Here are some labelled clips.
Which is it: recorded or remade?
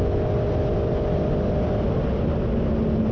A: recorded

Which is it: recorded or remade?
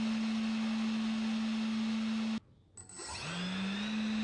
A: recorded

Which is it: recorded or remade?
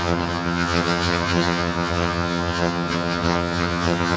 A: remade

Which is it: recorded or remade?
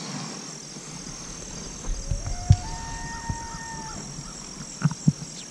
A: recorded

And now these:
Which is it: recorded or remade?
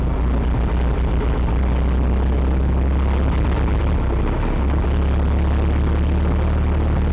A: recorded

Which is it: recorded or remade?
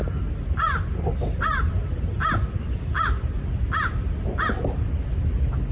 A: recorded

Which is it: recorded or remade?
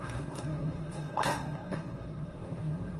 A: remade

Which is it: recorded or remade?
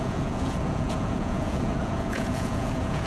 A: remade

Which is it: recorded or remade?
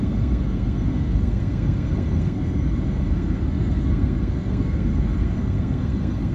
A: remade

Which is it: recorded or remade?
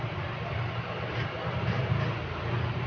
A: recorded